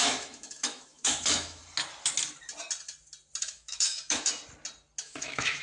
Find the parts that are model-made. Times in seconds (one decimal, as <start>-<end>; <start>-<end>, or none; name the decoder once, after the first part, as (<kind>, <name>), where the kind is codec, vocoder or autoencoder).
0.0-1.6 (autoencoder, DAC-VAE); 3.4-4.4; 5.0-5.6